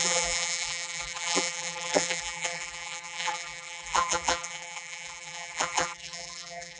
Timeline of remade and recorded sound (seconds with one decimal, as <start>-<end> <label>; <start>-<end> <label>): 0.0-6.8 remade

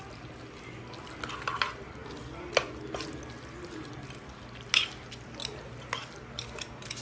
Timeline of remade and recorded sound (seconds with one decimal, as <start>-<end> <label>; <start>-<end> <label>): 0.0-7.0 recorded